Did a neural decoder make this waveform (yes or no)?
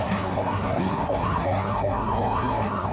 yes